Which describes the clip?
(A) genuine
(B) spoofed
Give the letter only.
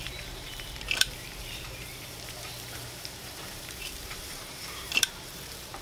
B